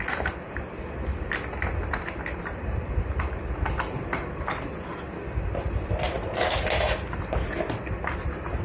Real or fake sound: real